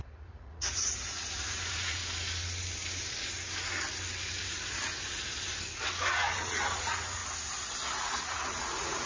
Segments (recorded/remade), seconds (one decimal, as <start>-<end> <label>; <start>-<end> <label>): 0.0-2.0 remade; 2.0-6.1 recorded; 6.1-7.2 remade; 7.2-8.0 recorded; 8.0-9.1 remade